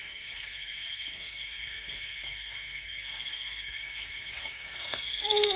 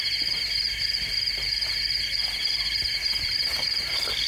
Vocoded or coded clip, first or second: first